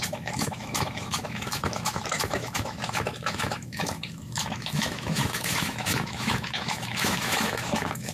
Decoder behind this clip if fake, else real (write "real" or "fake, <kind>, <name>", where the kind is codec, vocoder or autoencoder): fake, autoencoder, DAC-VAE